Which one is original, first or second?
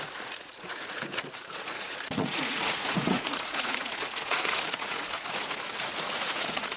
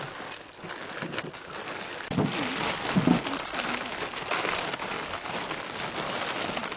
second